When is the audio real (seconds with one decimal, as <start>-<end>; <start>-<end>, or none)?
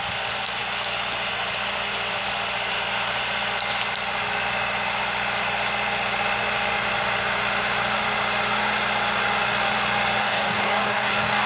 0.0-10.2